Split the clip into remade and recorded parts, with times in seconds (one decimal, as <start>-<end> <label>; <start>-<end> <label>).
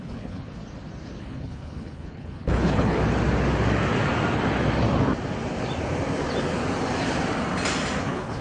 0.0-0.6 remade; 0.6-1.2 recorded; 1.2-3.0 remade; 3.0-8.0 recorded; 8.0-8.4 remade